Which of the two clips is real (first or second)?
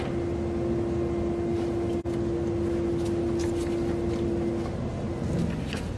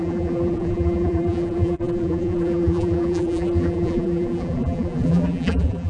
first